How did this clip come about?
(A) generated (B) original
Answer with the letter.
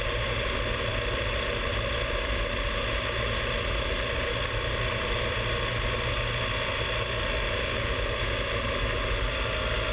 B